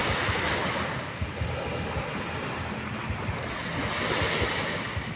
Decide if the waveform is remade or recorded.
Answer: recorded